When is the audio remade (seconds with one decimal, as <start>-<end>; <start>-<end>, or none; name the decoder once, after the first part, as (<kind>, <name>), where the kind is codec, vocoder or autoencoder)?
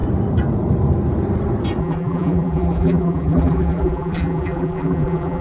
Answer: 1.8-5.4 (vocoder, BigVGAN v2)